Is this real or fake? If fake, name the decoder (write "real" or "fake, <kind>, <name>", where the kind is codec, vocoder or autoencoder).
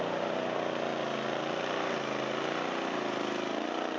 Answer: real